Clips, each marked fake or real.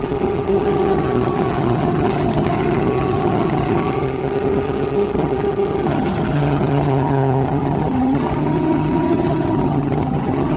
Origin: fake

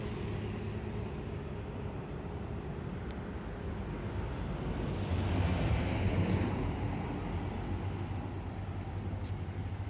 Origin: real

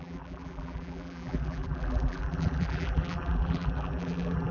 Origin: fake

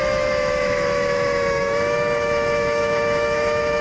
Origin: fake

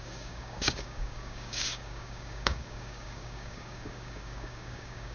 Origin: fake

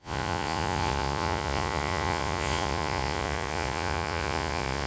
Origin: fake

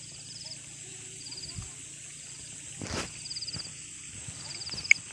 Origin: real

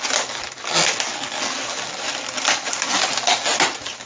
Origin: real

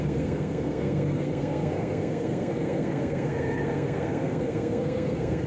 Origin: fake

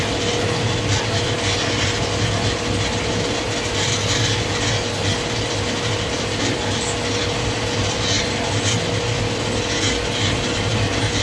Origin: real